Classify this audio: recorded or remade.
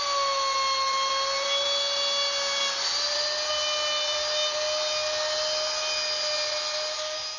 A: recorded